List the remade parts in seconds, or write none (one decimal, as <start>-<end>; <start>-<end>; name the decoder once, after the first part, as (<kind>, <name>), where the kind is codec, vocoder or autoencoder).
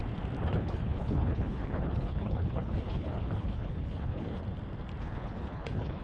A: 0.5-4.4 (codec, HILCodec); 5.0-6.0